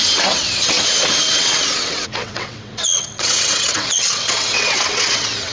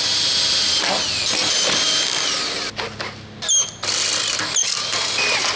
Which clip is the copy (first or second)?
first